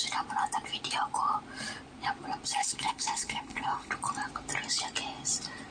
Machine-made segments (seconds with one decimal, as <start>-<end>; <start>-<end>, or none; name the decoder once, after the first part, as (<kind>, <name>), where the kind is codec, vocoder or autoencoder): 2.6-3.9 (codec, HILCodec)